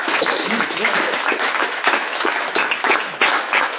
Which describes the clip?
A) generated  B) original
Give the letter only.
A